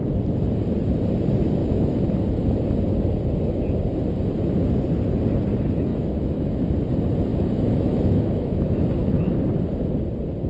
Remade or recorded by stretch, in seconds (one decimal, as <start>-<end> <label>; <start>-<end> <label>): 0.0-1.6 recorded; 1.6-2.1 remade; 2.1-5.9 recorded; 5.9-6.7 remade; 6.7-7.3 recorded; 7.3-8.9 remade; 8.9-10.5 recorded